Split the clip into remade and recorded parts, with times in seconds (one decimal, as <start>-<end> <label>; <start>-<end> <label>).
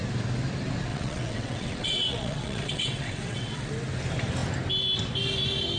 0.0-0.9 recorded; 0.9-3.7 remade; 3.7-5.8 recorded